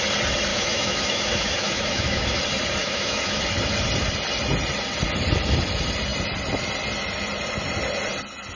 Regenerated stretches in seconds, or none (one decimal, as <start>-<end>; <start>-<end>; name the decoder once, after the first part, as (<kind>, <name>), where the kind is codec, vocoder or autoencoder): 0.5-2.4 (autoencoder, DAC-VAE); 2.8-3.4